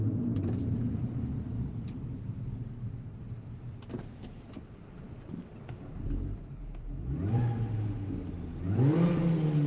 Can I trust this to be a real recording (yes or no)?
yes